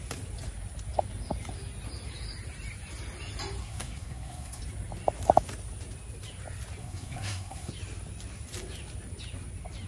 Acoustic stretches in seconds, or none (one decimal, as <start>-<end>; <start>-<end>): 0.0-3.6; 4.6-6.8; 7.7-9.9